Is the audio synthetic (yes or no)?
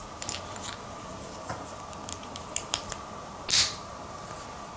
no